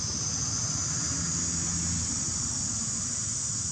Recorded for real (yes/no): yes